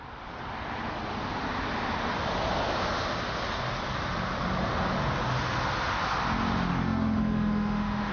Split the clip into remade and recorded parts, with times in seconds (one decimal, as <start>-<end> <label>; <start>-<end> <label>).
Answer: 0.0-6.7 recorded; 6.7-8.1 remade